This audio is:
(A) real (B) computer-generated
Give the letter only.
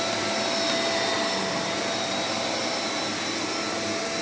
A